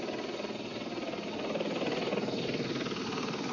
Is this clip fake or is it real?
real